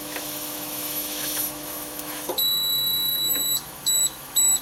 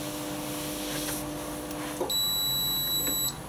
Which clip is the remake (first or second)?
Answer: first